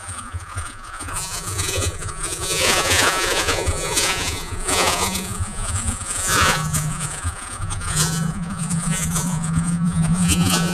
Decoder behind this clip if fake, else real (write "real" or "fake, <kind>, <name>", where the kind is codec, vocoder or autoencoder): fake, vocoder, Vocos